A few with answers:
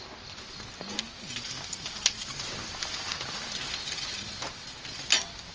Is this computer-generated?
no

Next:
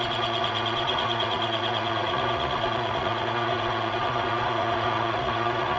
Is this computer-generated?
yes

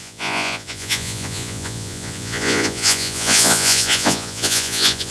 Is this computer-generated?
yes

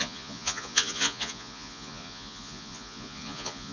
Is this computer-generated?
yes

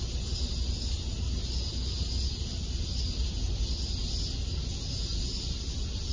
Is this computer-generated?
no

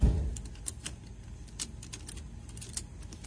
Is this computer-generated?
no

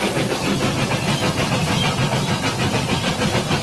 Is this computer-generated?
no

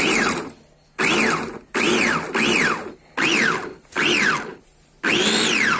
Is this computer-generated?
no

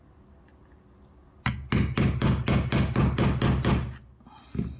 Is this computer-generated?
no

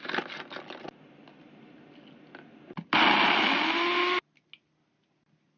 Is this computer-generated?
no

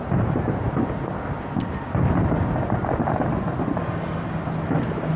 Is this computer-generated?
no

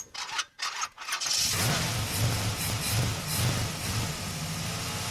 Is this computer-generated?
no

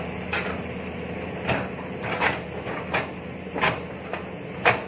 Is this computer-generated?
no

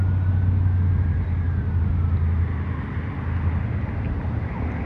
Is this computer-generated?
no